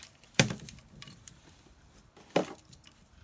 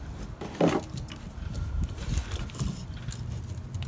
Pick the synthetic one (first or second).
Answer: first